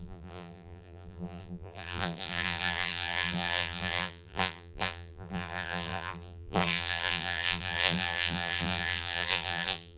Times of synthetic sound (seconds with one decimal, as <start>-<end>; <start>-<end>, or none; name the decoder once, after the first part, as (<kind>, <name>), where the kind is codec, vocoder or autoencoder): 0.0-10.0 (vocoder, BigVGAN v2)